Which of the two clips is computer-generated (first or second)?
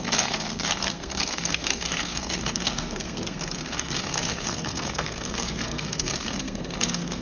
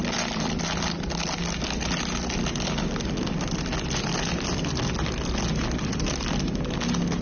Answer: first